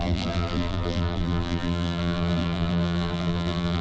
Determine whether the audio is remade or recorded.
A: remade